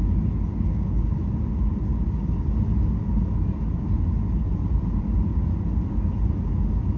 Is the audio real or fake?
real